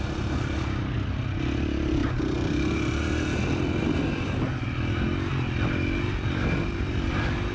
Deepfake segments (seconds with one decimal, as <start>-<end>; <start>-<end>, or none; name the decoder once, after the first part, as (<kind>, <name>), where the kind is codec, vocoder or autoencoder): none